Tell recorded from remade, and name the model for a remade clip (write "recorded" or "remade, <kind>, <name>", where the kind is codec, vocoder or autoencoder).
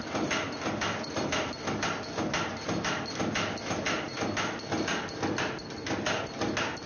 recorded